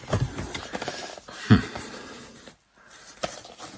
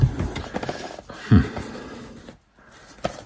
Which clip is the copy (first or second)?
first